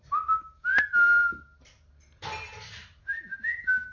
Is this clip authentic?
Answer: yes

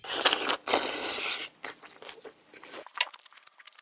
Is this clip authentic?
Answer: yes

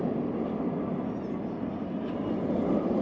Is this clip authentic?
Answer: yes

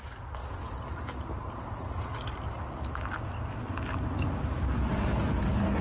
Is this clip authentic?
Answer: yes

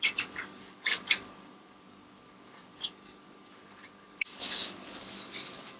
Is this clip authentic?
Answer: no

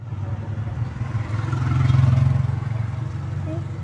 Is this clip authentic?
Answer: yes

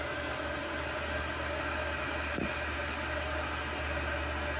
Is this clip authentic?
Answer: yes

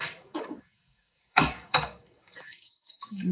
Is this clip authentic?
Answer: no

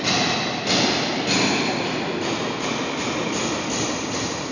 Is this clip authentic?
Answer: yes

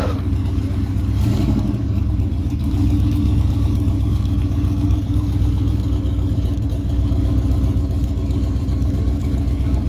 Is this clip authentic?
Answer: no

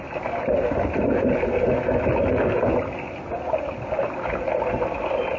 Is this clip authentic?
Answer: yes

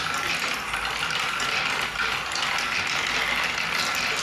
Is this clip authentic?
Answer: yes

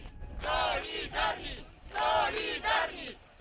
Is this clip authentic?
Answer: yes